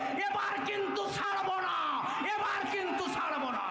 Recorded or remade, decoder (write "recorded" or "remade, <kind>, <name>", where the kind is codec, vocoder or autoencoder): recorded